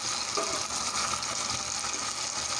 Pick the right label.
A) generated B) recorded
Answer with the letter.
B